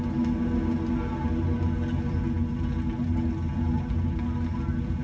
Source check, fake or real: real